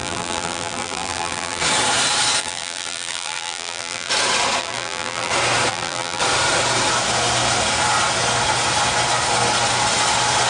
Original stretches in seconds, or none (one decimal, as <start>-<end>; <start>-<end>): 1.6-2.4; 4.1-4.6; 5.3-5.7; 6.2-10.5

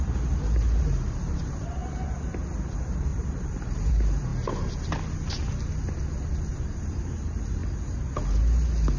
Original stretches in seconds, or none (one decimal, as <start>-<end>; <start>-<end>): 1.8-2.7; 4.3-6.5; 7.6-9.0

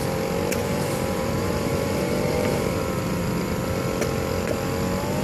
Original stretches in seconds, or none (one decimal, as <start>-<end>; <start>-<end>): 0.0-0.6; 2.8-5.2

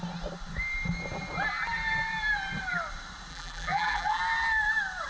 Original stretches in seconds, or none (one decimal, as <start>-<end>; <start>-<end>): 0.0-3.3; 4.2-5.1